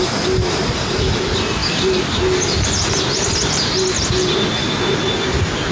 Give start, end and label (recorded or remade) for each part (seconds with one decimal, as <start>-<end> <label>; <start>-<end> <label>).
0.0-5.7 recorded